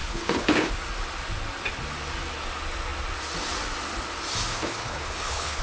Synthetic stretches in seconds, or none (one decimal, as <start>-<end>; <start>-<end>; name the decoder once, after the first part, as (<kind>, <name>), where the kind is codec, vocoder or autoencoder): 0.0-0.7 (codec, HILCodec); 4.5-5.6